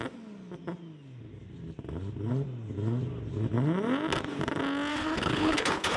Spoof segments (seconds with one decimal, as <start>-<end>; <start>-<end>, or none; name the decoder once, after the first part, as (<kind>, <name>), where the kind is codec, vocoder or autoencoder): 4.9-6.0 (codec, HILCodec)